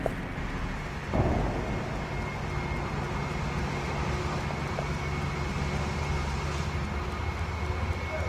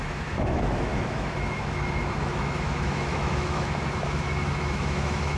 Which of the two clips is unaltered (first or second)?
first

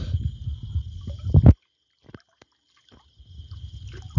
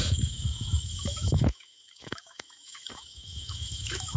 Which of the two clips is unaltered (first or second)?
first